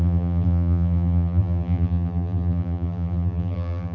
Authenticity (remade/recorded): remade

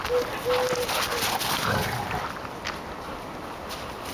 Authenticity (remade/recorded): recorded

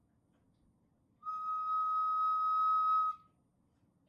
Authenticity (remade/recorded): recorded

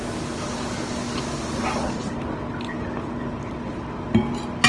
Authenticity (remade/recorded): recorded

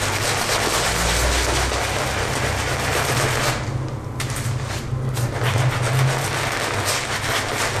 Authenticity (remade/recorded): recorded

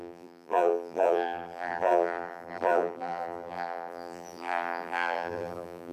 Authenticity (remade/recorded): remade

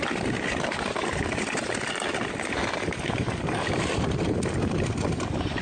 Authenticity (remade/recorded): recorded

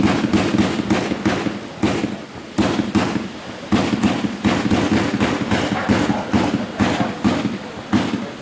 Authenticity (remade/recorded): recorded